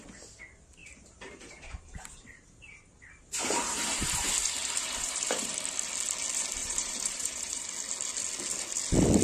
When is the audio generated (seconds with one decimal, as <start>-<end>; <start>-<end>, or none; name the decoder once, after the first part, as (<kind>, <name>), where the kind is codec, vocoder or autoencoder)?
0.8-4.3 (vocoder, BigVGAN v2); 4.8-5.5; 6.6-7.6